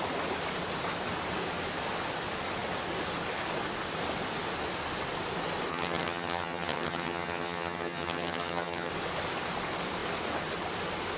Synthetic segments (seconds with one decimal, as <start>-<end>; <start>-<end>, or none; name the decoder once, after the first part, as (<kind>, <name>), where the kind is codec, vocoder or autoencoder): 5.7-8.9 (vocoder, HiFi-GAN)